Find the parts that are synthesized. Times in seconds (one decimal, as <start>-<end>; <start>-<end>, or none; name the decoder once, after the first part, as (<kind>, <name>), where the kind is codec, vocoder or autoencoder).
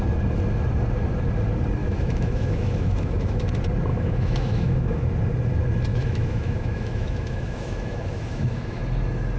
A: 1.8-3.5 (autoencoder, DAC-VAE); 3.9-5.1; 5.9-8.8